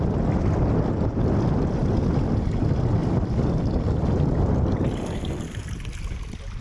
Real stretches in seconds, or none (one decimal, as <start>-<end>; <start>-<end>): 0.0-3.0

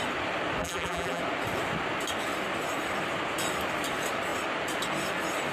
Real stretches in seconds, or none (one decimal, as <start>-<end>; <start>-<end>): 0.0-0.6; 1.2-5.5

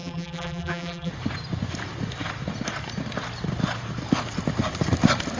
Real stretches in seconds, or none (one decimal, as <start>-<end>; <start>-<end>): 1.1-5.4

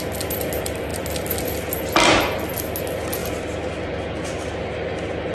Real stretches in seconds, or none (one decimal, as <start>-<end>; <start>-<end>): 0.0-3.2; 4.3-5.3